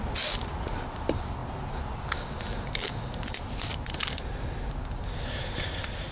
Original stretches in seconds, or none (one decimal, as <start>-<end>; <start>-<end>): 0.0-6.1